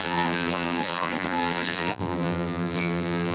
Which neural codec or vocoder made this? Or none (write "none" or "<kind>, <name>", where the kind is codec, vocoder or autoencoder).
vocoder, BigVGAN v2